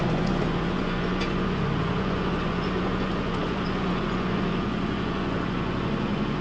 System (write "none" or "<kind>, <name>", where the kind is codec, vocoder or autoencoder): vocoder, Vocos